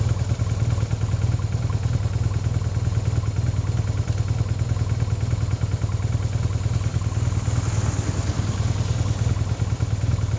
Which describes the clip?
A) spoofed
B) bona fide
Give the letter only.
B